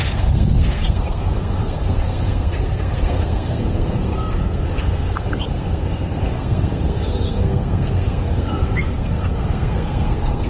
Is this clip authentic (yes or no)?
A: no